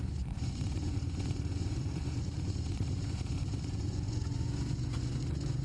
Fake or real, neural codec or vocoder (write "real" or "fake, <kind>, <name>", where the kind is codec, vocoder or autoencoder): fake, vocoder, Vocos